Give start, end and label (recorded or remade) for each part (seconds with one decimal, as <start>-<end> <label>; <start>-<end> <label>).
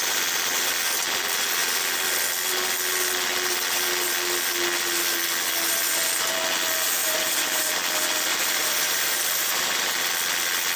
0.0-7.0 recorded; 7.0-7.7 remade; 7.7-8.3 recorded; 8.3-10.0 remade; 10.0-10.8 recorded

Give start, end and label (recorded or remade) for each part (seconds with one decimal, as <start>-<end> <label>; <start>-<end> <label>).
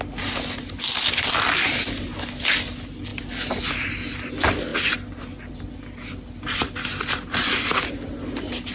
0.0-8.7 recorded